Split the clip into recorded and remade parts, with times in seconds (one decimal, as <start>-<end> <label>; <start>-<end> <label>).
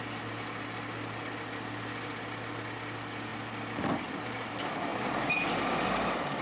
0.0-6.4 recorded